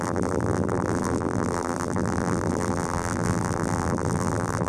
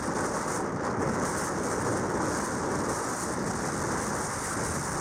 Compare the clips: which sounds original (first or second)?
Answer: second